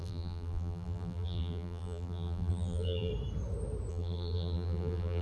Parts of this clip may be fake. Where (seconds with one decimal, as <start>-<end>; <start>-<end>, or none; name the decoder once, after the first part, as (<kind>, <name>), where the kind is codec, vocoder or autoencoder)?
0.0-3.1 (vocoder, BigVGAN v2); 3.9-5.2